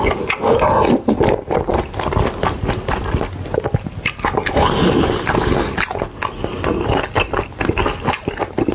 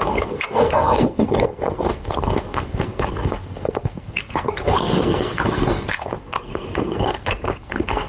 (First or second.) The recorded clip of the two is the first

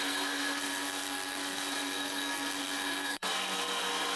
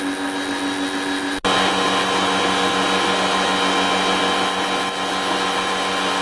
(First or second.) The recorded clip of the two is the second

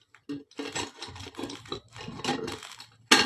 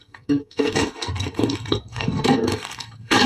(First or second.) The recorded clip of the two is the first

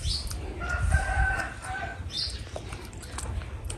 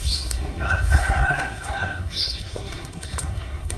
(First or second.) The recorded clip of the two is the first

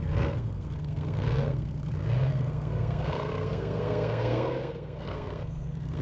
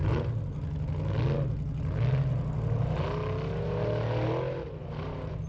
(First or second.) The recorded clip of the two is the second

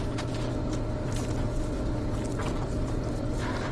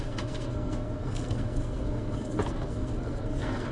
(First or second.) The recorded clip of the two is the first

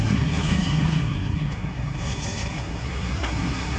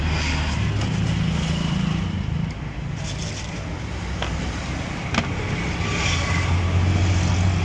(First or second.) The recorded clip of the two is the second